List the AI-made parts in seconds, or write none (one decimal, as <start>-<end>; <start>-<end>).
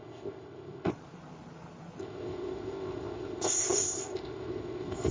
0.0-0.9; 2.0-5.1